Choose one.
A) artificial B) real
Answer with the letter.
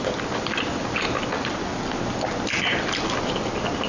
B